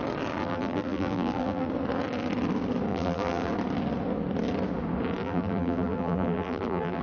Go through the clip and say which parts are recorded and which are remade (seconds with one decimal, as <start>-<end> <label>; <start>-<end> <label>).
0.0-0.4 recorded; 0.4-1.7 remade; 1.7-2.9 recorded; 2.9-3.5 remade; 3.5-5.2 recorded; 5.2-7.0 remade